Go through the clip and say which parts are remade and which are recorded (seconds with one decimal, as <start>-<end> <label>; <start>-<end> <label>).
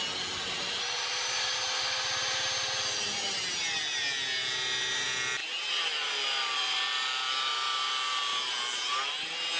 0.0-9.6 recorded